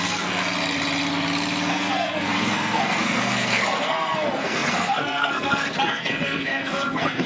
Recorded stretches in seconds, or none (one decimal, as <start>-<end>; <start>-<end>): 0.4-1.7